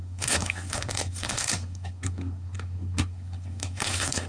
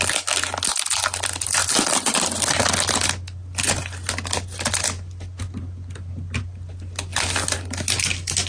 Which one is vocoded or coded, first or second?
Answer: first